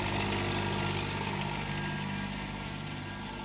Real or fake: real